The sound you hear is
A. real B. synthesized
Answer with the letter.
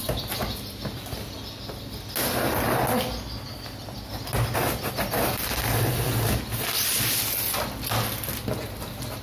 A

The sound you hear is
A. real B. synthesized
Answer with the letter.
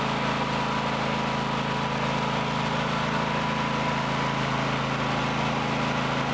A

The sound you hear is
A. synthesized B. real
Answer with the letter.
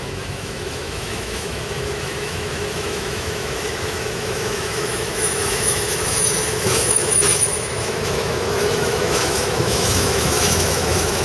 A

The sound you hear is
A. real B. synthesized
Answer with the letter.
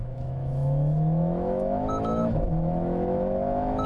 B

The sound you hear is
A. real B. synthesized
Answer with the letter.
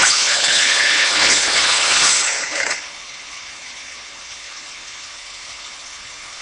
B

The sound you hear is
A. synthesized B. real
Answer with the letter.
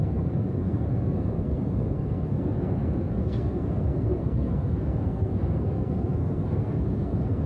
A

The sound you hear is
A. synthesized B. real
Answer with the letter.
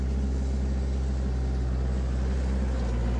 B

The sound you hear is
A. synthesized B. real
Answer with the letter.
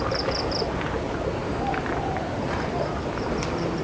B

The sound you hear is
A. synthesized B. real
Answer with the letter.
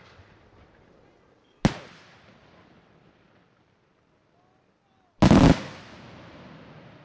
B